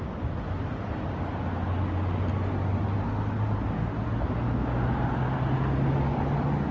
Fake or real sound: real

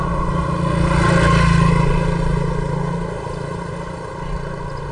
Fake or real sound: real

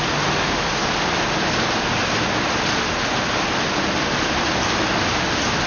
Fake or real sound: real